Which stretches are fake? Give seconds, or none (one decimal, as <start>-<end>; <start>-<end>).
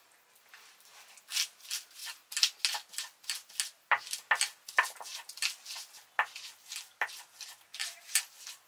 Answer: 7.7-8.2